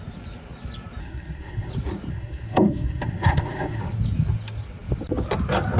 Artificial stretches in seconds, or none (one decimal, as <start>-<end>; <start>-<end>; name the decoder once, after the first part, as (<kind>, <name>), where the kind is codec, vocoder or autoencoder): 1.0-1.7 (codec, SNAC); 2.1-3.8